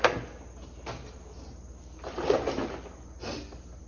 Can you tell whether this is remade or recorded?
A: recorded